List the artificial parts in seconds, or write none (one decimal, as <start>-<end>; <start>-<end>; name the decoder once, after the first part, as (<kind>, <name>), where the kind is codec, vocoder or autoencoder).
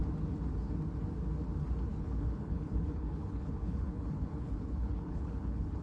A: 1.9-5.8 (codec, HILCodec)